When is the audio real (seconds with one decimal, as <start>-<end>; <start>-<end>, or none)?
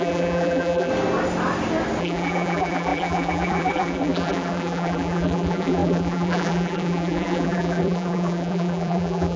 0.9-2.0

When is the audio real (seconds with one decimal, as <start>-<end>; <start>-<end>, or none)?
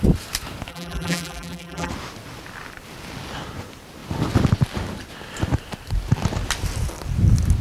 0.0-0.7; 1.9-7.6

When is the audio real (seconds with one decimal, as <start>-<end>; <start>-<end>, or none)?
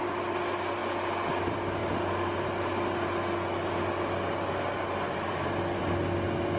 0.0-6.6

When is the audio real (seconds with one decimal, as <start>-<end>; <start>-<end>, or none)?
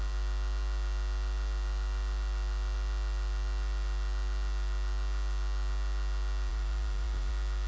0.0-6.5; 7.3-7.7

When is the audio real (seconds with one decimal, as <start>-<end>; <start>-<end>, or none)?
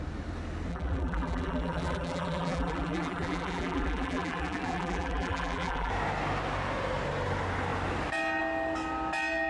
0.0-0.7; 5.9-9.5